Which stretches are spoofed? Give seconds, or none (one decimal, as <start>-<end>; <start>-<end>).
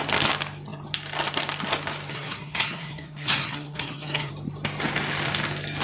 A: 2.1-4.3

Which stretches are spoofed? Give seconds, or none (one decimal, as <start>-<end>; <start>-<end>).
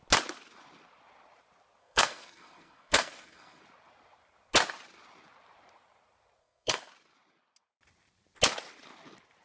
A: 1.8-3.6; 6.4-6.9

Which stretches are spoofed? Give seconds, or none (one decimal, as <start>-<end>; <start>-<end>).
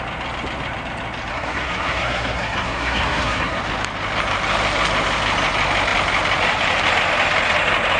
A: 1.3-3.6